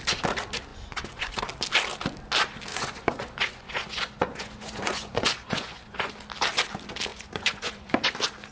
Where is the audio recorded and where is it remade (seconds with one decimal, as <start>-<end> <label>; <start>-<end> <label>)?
0.0-0.7 recorded; 0.7-1.4 remade; 1.4-2.7 recorded; 2.7-6.1 remade; 6.1-7.1 recorded; 7.1-8.1 remade; 8.1-8.5 recorded